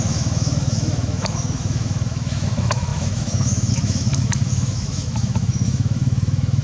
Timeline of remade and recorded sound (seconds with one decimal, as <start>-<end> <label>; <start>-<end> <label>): 0.0-6.6 remade